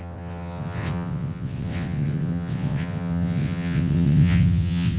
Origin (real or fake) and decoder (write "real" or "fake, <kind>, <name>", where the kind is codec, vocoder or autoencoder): fake, vocoder, WaveNeXt